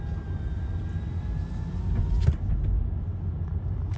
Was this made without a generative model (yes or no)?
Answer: yes